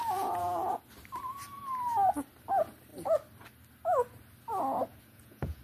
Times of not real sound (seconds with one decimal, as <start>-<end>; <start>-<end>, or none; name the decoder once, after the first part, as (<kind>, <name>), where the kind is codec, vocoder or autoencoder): 0.0-0.8 (vocoder, Vocos); 4.9-5.6